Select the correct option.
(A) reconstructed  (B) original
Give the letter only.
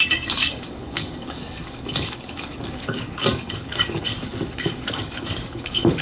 A